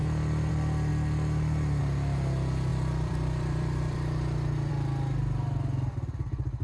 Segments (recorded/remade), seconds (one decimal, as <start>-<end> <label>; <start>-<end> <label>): 0.0-2.7 recorded; 2.7-4.7 remade; 4.7-6.6 recorded